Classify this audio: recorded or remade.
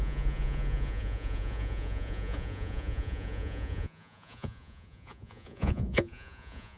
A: remade